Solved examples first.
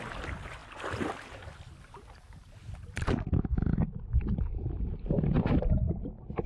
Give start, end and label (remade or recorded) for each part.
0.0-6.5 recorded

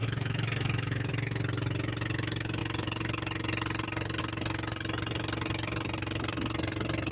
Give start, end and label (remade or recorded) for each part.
0.0-1.1 remade; 1.1-7.1 recorded

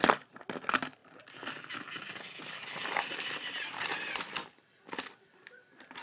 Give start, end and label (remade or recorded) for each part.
0.0-6.0 recorded

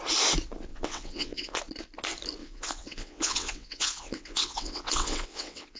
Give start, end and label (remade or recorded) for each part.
0.0-0.7 recorded; 0.7-1.6 remade; 1.6-2.4 recorded; 2.4-5.8 remade

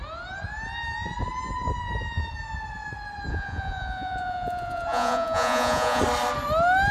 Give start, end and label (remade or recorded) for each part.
0.0-3.3 recorded; 3.3-6.0 remade; 6.0-6.9 recorded

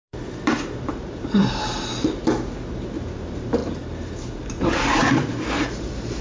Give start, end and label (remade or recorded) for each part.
0.0-6.2 remade